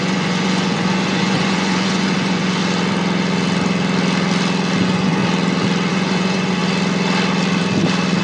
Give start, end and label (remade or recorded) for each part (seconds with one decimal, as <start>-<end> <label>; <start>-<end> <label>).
0.0-2.6 remade; 2.6-4.8 recorded; 4.8-5.2 remade; 5.2-5.9 recorded; 5.9-6.6 remade; 6.6-8.2 recorded